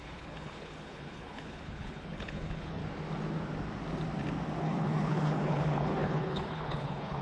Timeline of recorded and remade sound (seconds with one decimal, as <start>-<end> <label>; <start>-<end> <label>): 0.0-2.8 remade; 2.8-4.6 recorded; 4.6-7.2 remade

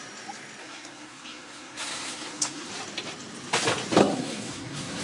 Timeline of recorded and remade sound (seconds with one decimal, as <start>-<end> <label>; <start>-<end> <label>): 0.0-0.6 recorded; 0.6-2.7 remade; 2.7-4.0 recorded; 4.0-5.0 remade

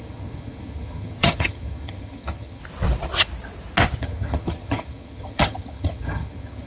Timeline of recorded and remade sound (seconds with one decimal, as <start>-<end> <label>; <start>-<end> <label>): 0.0-2.6 remade; 2.6-4.0 recorded; 4.0-6.7 remade

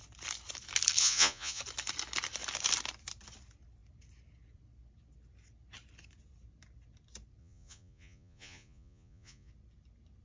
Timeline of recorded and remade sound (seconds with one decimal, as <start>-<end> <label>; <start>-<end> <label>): 0.0-1.0 recorded; 1.0-1.6 remade; 1.6-7.4 recorded; 7.4-9.5 remade; 9.5-10.2 recorded

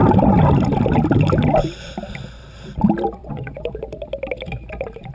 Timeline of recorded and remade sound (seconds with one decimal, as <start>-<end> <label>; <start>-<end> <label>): 0.0-3.2 recorded; 3.2-3.8 remade; 3.8-5.1 recorded

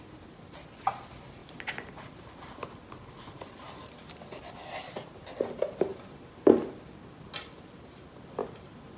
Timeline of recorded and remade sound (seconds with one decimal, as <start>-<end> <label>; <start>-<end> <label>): 0.0-1.4 recorded; 1.4-4.4 remade; 4.4-5.9 recorded; 5.9-8.0 remade; 8.0-9.0 recorded